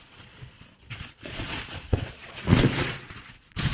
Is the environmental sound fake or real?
fake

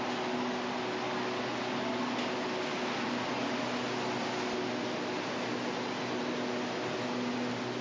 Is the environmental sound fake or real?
real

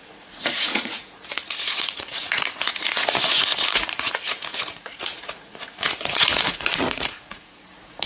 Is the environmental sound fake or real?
fake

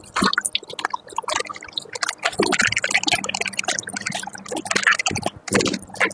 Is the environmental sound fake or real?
real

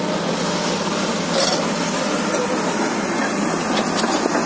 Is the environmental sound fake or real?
real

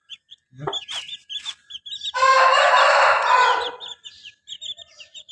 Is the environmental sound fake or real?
real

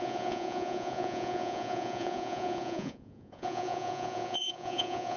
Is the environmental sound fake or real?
fake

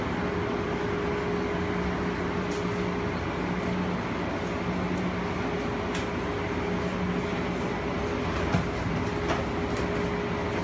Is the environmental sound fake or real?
real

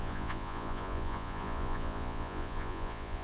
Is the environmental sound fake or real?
fake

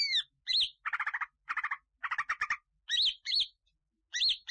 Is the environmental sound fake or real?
real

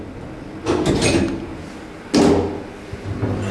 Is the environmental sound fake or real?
real